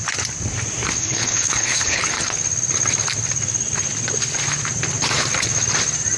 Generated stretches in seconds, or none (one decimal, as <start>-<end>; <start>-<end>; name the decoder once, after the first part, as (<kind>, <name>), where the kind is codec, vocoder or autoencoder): 1.0-2.0 (codec, HILCodec)